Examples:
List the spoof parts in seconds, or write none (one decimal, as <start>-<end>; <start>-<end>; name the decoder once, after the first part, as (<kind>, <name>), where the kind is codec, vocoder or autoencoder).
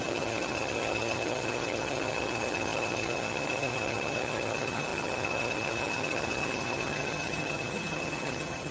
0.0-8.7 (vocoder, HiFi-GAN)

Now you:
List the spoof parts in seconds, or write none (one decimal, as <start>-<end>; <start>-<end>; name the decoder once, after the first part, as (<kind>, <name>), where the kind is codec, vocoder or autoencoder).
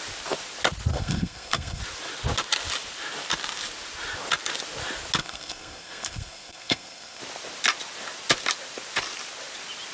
0.9-1.8 (codec, SNAC); 5.2-7.2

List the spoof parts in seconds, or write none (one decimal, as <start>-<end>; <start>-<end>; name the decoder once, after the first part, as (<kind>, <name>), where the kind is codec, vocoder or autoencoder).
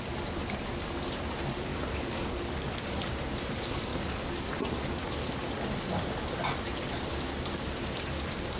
1.7-2.8 (codec, DAC); 3.9-4.5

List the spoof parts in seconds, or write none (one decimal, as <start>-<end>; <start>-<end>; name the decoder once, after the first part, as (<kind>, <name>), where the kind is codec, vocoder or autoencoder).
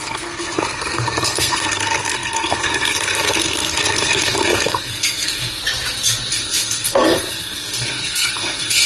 0.0-5.6 (codec, SNAC); 6.3-8.9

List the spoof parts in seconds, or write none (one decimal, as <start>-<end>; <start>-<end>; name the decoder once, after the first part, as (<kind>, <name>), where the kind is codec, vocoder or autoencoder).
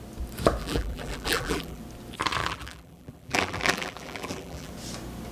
0.6-1.8 (vocoder, BigVGAN v2); 2.4-4.7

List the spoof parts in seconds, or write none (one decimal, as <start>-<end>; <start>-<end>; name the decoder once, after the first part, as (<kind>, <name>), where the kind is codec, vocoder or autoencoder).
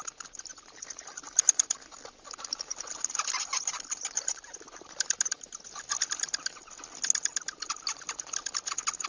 none